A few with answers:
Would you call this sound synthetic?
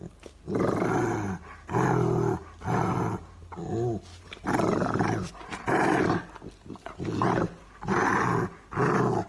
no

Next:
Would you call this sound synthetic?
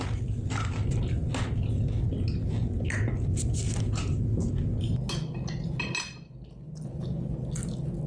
no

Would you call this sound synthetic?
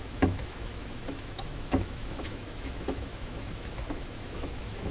yes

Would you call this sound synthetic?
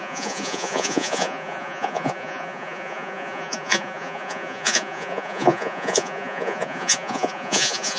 yes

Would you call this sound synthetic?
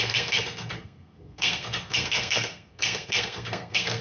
yes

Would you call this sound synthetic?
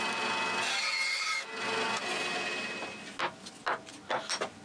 no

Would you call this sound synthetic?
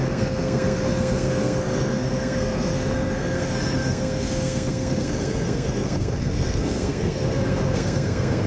yes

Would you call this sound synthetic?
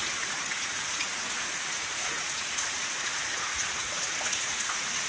yes